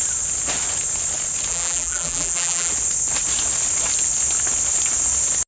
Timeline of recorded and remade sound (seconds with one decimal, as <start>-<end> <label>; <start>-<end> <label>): 0.0-1.5 recorded; 1.5-2.7 remade; 2.7-5.5 recorded